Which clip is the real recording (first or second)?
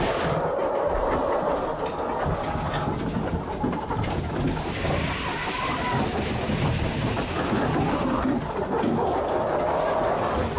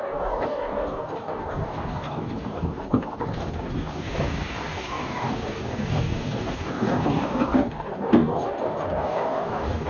first